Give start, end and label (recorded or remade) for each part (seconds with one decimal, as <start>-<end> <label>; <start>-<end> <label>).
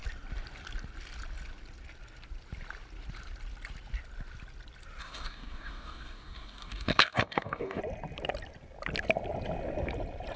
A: 0.0-5.0 recorded; 5.0-7.8 remade; 7.8-10.4 recorded